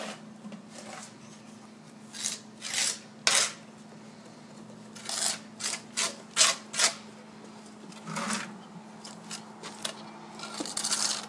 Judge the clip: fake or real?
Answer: real